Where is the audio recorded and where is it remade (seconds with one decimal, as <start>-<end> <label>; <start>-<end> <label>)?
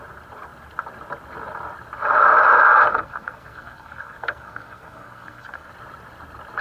0.0-2.9 recorded; 2.9-5.7 remade; 5.7-6.6 recorded